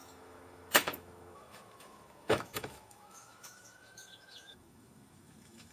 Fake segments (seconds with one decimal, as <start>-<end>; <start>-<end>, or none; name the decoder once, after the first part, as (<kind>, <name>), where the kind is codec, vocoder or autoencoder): 0.0-5.7 (autoencoder, DAC-VAE)